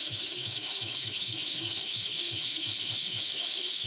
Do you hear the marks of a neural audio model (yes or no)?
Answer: yes